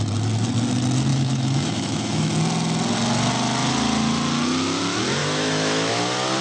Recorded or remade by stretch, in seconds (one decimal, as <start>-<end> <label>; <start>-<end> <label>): 0.0-1.1 recorded; 1.1-2.3 remade; 2.3-5.2 recorded; 5.2-5.9 remade; 5.9-6.4 recorded